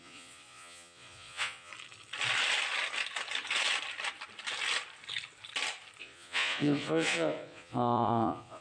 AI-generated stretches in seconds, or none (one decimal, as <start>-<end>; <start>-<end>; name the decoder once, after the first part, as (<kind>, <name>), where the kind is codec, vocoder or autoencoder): 0.0-1.7 (vocoder, Vocos); 6.0-8.6